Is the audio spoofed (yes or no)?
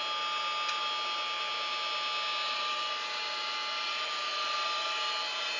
no